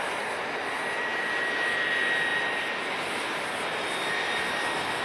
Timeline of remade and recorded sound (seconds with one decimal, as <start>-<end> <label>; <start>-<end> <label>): 0.0-5.0 recorded